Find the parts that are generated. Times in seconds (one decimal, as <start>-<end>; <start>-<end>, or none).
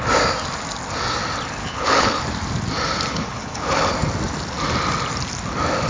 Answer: 1.6-2.2; 3.1-3.9